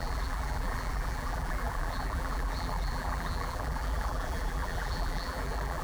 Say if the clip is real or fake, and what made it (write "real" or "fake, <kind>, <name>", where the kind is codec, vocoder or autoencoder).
fake, vocoder, BigVGAN v2